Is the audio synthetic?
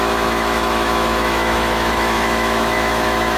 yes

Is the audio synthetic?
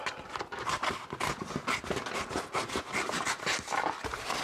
no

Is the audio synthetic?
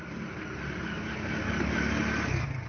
no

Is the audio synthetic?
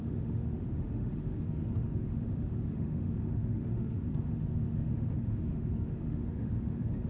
yes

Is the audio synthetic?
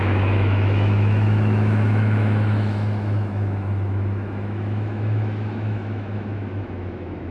yes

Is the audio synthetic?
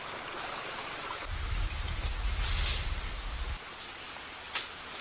no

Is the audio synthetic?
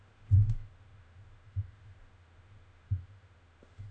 yes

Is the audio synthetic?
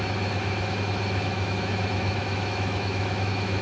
yes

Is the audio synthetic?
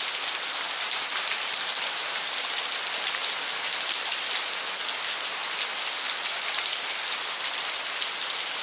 no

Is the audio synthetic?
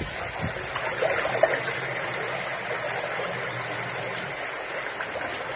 no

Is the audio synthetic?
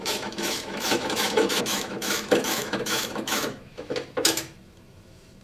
yes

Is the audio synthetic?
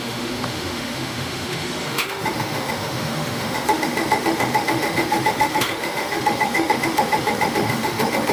yes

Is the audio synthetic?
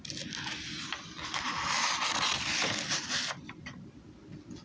no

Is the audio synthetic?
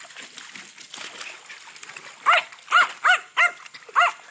no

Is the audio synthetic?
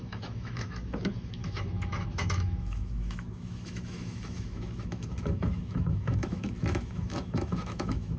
yes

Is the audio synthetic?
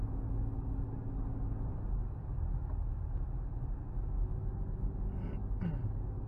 no